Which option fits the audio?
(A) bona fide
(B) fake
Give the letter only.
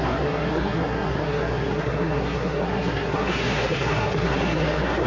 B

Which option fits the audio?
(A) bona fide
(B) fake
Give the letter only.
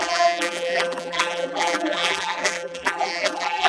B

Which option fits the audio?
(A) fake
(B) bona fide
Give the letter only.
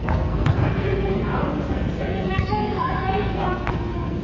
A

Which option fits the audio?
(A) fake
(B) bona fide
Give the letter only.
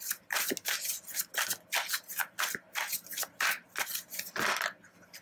B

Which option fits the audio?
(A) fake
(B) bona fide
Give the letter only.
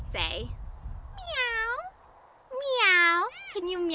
B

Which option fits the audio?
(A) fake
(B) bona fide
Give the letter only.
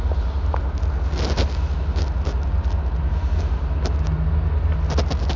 B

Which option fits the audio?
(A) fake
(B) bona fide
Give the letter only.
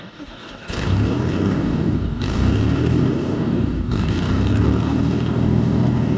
A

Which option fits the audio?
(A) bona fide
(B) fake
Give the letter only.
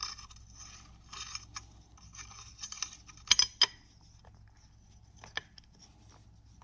A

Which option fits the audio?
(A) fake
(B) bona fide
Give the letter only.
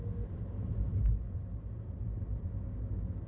B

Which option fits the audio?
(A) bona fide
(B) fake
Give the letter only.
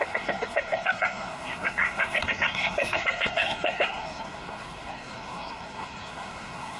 B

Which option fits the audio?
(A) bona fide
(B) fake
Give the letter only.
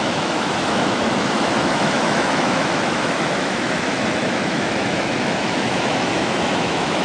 B